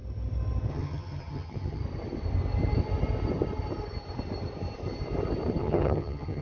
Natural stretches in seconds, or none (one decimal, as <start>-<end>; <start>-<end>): 0.0-0.7; 1.8-5.6